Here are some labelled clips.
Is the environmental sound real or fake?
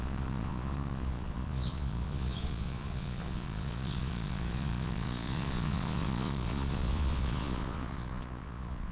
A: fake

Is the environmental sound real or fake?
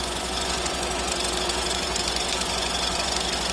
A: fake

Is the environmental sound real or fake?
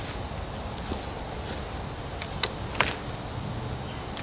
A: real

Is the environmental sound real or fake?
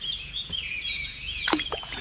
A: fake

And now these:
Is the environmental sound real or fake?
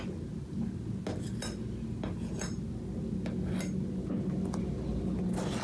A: real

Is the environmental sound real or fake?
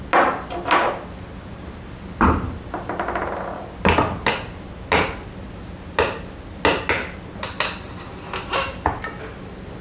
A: real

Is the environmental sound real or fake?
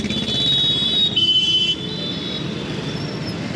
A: real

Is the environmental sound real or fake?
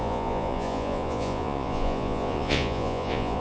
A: fake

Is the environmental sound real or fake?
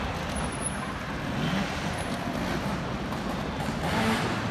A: real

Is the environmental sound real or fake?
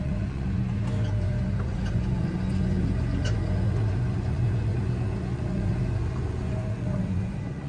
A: fake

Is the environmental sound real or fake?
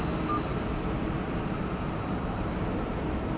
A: real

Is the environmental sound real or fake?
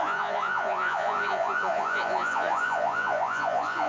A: fake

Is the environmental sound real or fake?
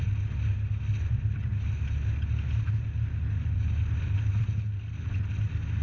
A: real